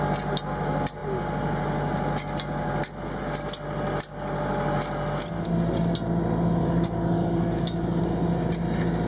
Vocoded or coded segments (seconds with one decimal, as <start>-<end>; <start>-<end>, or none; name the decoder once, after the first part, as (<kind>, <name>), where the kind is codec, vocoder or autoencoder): 6.6-8.0 (codec, DAC)

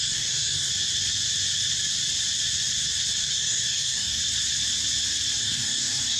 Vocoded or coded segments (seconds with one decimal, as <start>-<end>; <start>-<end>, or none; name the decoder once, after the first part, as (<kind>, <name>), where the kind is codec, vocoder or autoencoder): 0.0-0.7 (codec, DAC); 3.2-4.2; 5.4-6.2

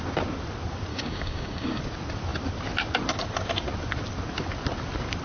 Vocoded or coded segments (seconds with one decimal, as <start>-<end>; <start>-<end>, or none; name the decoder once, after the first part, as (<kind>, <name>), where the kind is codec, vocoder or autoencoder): 0.9-1.8 (codec, DAC)